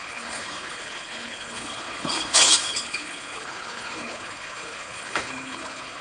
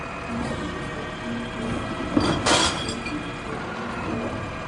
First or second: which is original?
second